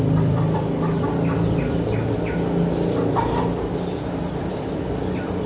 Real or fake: real